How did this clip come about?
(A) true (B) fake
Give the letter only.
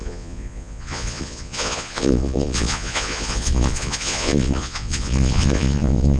B